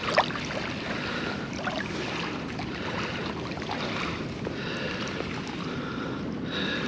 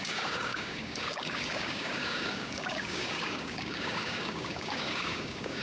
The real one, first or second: first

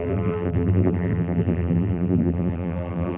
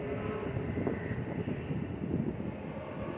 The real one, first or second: second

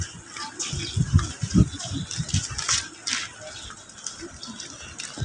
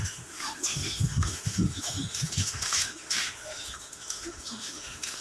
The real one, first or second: first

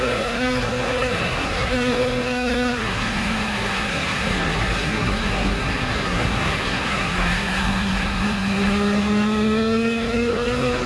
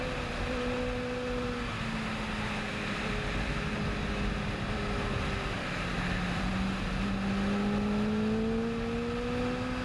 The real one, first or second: second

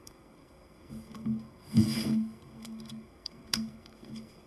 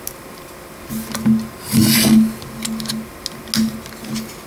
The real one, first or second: second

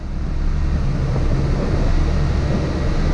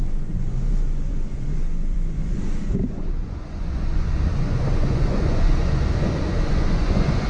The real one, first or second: first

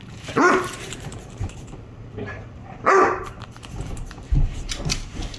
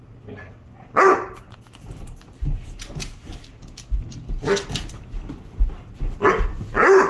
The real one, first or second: second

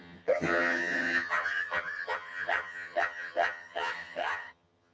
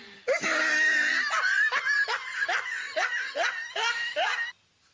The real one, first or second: second